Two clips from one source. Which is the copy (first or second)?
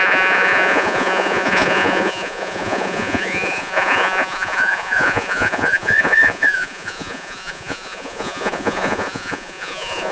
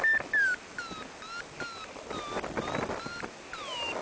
first